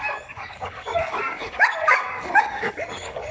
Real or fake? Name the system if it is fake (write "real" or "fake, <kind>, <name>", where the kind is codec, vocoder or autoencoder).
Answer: fake, codec, DAC